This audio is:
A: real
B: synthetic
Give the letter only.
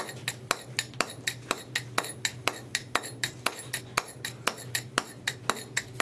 A